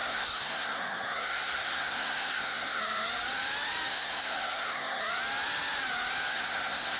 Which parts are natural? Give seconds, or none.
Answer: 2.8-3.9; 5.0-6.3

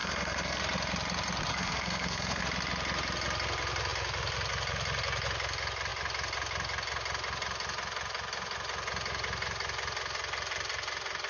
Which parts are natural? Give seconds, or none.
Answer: 0.6-1.5; 2.4-11.3

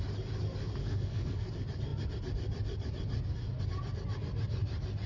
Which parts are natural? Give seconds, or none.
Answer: 0.0-0.8; 1.5-5.1

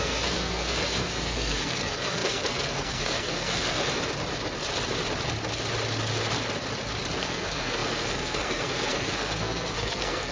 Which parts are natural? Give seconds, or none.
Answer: 3.8-7.2

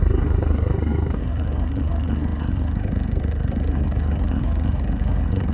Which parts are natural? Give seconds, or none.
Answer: none

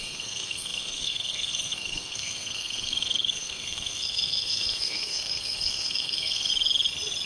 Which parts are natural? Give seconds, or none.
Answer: 6.5-7.3

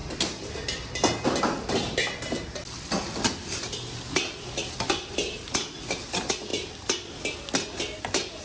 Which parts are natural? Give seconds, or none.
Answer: 0.0-8.4